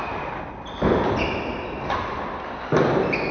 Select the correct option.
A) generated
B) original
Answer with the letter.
B